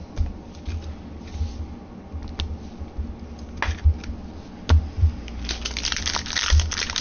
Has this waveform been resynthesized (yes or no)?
no